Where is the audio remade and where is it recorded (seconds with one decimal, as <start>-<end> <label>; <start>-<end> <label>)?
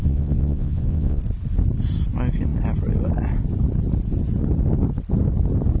0.0-1.2 remade; 1.2-5.8 recorded